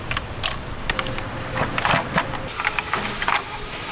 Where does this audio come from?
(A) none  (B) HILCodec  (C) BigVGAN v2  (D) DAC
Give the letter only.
C